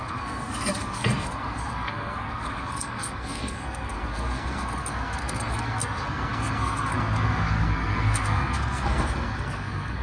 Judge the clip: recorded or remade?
remade